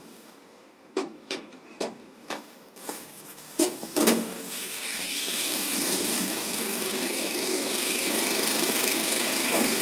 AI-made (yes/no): yes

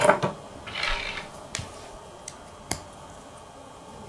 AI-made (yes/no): no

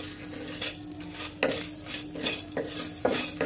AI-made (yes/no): no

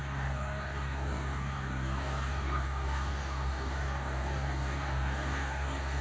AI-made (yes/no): yes